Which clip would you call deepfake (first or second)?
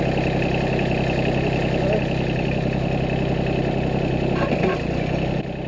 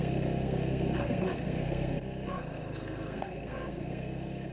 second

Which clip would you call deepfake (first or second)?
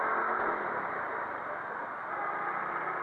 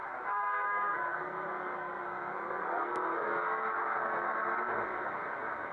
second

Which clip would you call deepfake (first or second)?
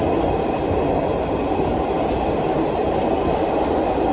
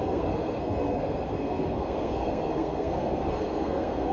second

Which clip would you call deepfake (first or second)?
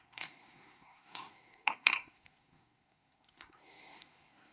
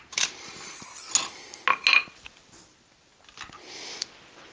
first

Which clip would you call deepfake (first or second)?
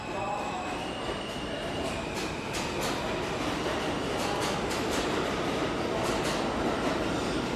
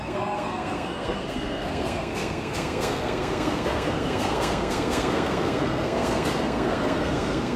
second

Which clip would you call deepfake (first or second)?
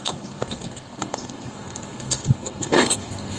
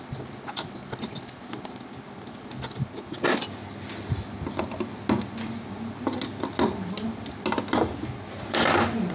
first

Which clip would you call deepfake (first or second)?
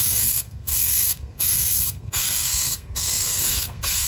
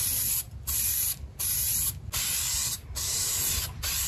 first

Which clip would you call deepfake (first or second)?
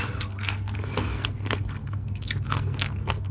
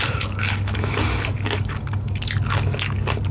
first